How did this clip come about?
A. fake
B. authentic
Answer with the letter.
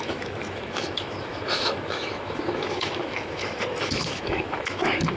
A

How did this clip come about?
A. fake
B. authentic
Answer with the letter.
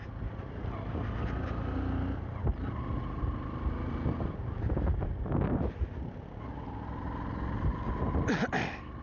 B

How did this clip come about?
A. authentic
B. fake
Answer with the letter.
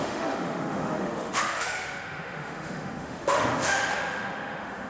B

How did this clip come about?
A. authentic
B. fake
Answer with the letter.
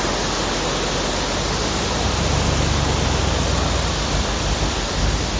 A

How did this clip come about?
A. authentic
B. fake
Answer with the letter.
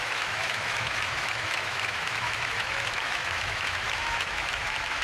B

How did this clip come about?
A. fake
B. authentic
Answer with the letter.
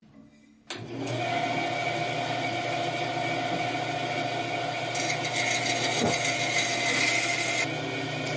B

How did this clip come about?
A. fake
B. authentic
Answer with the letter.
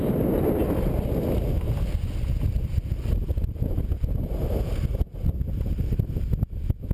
B